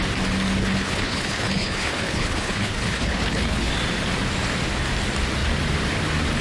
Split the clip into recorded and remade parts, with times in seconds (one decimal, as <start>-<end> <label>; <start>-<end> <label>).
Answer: 0.0-0.6 recorded; 0.6-3.7 remade; 3.7-6.4 recorded